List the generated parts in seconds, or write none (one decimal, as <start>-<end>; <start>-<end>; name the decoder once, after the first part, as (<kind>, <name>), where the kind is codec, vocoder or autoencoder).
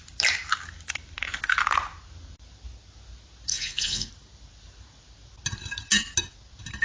3.5-4.1 (vocoder, Vocos)